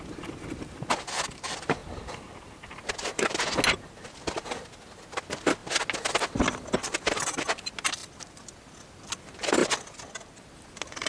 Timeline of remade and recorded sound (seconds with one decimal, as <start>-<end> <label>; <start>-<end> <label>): 0.0-11.1 recorded